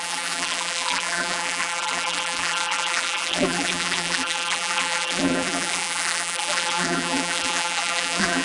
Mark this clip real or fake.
fake